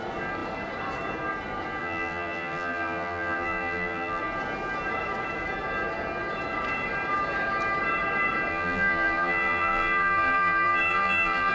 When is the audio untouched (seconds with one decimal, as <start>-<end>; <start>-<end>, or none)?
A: 0.0-1.8; 4.2-8.5